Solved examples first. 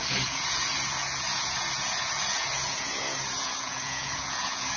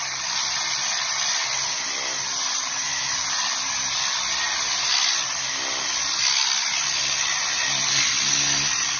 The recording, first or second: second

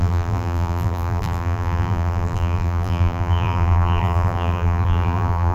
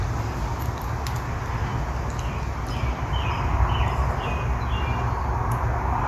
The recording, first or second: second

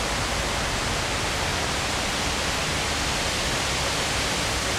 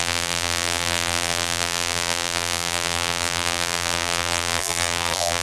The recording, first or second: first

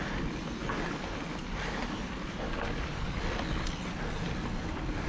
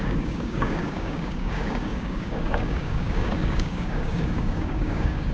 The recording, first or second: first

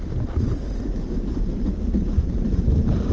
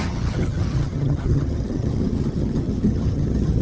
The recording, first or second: first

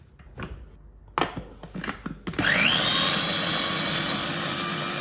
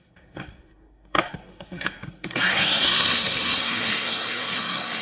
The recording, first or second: first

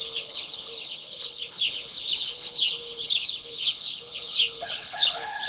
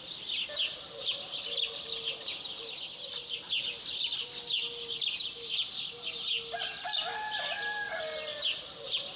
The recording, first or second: second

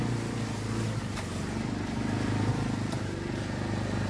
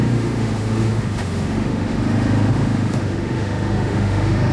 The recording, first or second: first